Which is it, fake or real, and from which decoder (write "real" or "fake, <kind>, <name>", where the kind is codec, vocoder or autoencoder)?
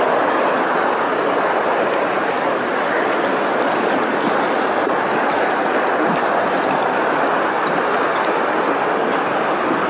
real